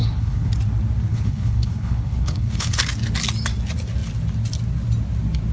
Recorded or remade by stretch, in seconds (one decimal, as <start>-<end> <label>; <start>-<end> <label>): 0.0-0.5 remade; 0.5-1.1 recorded; 1.1-2.8 remade; 2.8-5.5 recorded

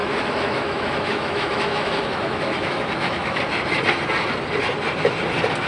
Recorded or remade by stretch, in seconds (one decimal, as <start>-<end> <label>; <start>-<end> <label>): 0.0-3.4 remade; 3.4-5.7 recorded

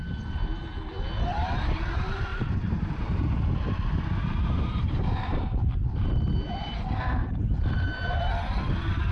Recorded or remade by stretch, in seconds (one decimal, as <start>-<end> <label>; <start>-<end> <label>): 0.0-2.3 recorded; 2.3-6.1 remade; 6.1-9.1 recorded

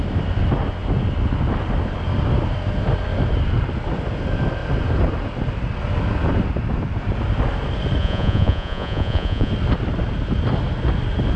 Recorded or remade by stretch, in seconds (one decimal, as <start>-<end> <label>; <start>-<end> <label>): 0.0-8.0 recorded; 8.0-9.5 remade; 9.5-11.4 recorded

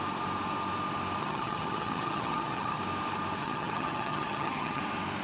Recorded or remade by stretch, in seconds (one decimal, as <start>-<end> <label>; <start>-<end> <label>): 0.0-1.2 recorded; 1.2-2.8 remade; 2.8-3.4 recorded; 3.4-4.8 remade; 4.8-5.2 recorded

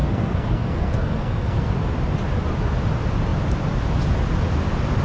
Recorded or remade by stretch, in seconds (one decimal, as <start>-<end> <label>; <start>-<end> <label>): 0.0-1.7 remade; 1.7-5.0 recorded